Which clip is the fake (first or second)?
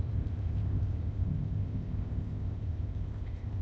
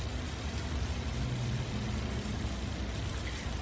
first